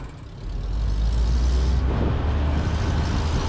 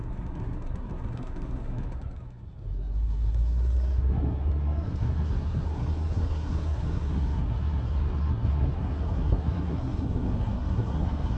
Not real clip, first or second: second